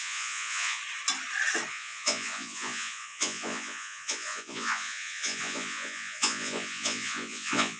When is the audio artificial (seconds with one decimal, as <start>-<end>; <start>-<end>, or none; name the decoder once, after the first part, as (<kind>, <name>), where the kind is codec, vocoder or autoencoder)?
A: 0.0-0.8 (vocoder, Vocos); 1.7-7.8